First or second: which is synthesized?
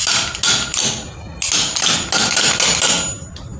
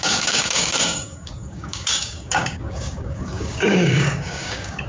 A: second